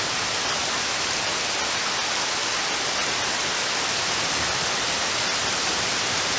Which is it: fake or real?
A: real